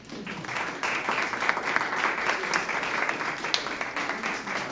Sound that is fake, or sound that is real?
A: real